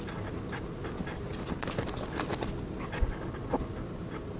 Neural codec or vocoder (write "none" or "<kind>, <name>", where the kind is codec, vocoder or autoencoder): none